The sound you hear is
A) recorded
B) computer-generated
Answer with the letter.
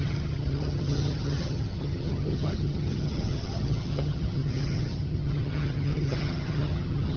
B